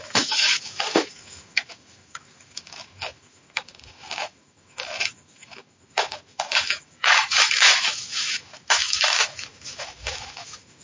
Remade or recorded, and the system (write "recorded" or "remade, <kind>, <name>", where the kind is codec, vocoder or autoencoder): remade, autoencoder, DAC-VAE